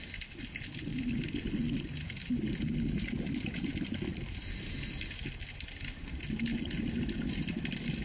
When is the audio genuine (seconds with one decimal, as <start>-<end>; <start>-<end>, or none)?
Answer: 0.0-0.9; 1.7-8.0